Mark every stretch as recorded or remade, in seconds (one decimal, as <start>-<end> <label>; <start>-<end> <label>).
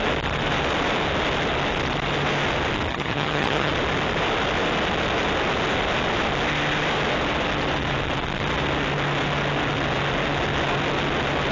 0.0-2.9 recorded; 2.9-3.7 remade; 3.7-11.5 recorded